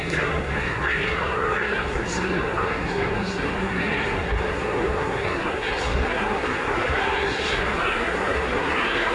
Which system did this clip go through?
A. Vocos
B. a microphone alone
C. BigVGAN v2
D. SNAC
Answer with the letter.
D